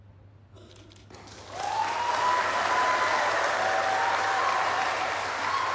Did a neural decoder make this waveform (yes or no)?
no